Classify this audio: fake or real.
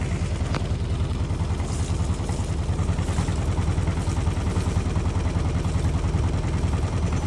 real